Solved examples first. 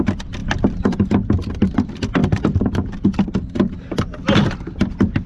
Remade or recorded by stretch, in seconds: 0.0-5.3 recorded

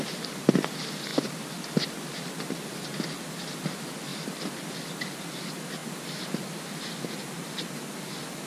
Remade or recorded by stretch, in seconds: 0.0-1.1 recorded; 1.1-2.3 remade; 2.3-4.1 recorded; 4.1-4.7 remade; 4.7-5.8 recorded; 5.8-7.0 remade; 7.0-8.5 recorded